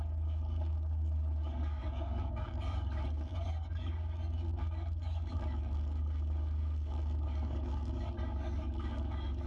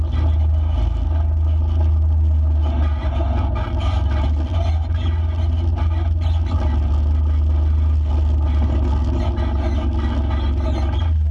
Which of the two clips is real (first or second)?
second